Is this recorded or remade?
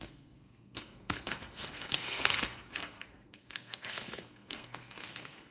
remade